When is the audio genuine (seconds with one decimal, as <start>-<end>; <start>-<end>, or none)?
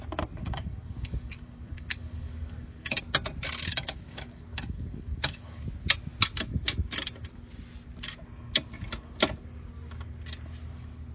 0.0-0.4; 3.0-3.7; 5.6-11.1